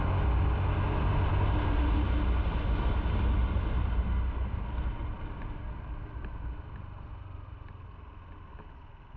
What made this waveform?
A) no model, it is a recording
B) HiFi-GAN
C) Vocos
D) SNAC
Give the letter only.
A